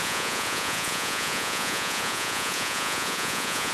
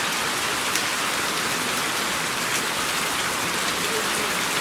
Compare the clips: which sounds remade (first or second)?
first